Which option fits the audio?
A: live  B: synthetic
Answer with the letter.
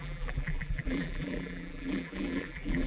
B